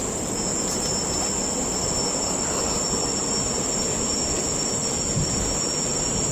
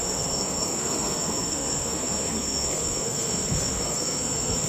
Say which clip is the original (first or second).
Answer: first